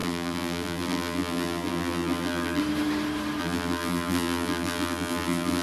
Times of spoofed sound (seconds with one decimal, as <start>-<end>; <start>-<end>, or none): 0.0-2.6; 3.4-5.6